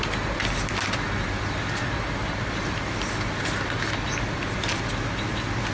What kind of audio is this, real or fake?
real